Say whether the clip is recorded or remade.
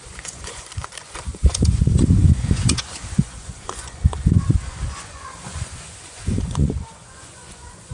remade